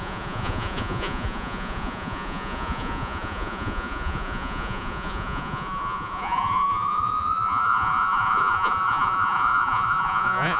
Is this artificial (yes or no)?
yes